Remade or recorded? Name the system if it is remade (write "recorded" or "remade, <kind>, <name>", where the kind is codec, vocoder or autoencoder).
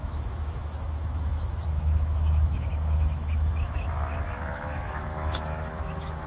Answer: remade, autoencoder, DAC-VAE